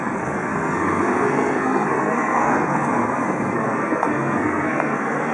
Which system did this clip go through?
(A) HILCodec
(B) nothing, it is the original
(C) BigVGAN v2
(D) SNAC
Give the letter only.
D